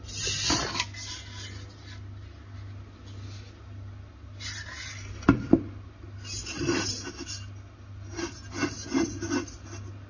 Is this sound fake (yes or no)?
no